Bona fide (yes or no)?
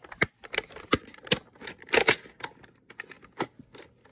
yes